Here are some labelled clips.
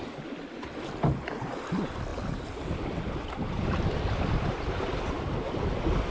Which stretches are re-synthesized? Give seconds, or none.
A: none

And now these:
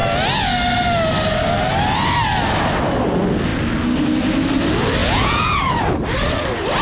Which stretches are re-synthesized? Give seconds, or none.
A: 5.0-5.7

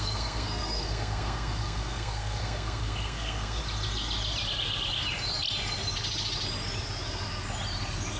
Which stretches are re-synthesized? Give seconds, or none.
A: 0.0-3.6

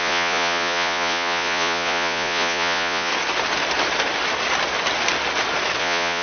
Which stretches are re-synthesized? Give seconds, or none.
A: 0.0-3.1; 5.8-6.2

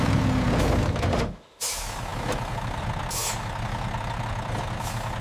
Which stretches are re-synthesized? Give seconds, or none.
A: 1.1-1.6